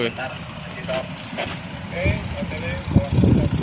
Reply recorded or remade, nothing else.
recorded